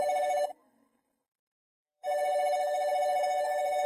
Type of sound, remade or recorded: remade